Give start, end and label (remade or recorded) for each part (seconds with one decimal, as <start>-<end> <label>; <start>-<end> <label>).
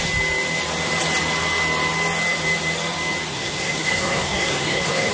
0.0-3.3 recorded; 3.3-5.1 remade